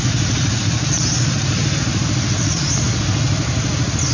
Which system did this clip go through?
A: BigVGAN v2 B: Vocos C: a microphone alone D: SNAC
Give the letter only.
C